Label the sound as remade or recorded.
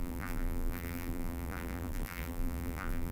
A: remade